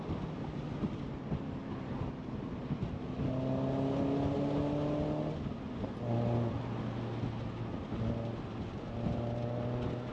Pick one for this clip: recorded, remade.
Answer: recorded